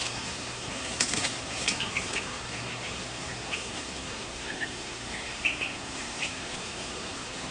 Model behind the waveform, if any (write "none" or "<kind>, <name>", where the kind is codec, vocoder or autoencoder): codec, SNAC